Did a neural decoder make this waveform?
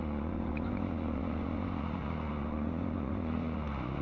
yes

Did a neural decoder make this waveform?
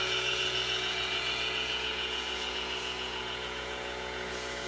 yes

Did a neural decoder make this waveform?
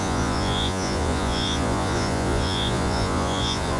yes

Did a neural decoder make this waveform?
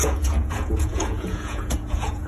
yes